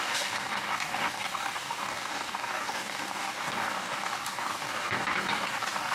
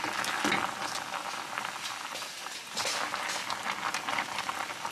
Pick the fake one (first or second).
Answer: first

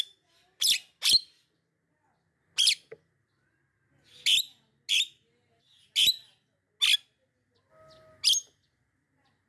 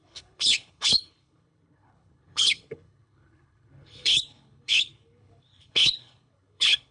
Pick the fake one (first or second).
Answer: second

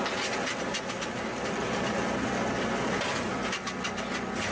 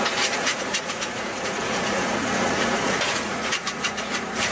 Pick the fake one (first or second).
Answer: second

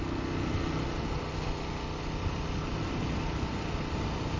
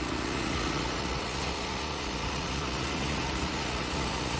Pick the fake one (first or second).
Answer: second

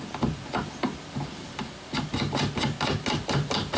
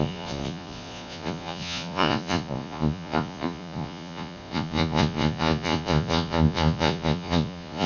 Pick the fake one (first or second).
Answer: second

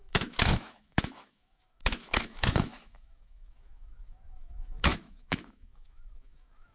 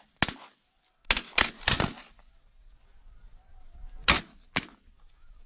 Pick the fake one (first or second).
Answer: first